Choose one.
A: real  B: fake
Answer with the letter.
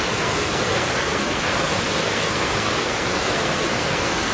B